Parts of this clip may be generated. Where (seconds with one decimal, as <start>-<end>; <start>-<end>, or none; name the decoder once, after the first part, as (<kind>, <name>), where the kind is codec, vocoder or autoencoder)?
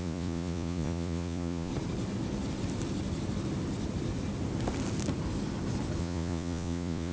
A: 0.0-1.7 (vocoder, Vocos); 6.0-7.1